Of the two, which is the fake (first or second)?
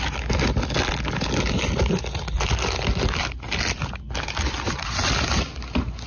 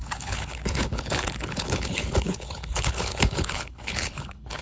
second